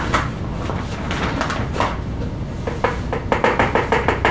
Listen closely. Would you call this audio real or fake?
real